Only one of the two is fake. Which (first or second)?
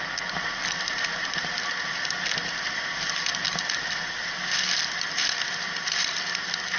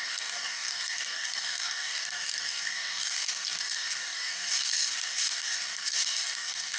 second